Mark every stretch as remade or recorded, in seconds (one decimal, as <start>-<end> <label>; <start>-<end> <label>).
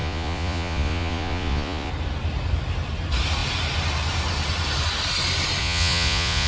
0.0-1.9 remade; 1.9-5.6 recorded; 5.6-6.5 remade